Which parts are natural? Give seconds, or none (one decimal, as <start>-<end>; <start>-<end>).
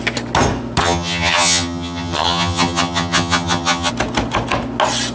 0.0-0.8; 3.9-5.1